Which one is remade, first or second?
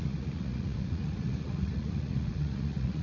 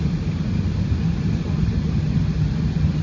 first